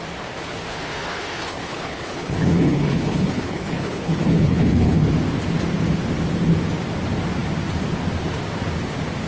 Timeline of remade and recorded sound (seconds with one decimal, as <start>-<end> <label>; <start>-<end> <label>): 0.0-0.7 recorded; 0.7-5.0 remade; 5.0-9.3 recorded